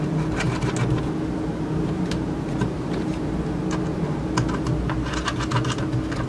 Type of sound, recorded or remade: recorded